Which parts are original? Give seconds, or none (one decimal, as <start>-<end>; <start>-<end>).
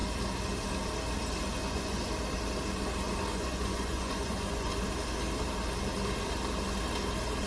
0.0-1.6; 2.1-3.3; 4.7-7.5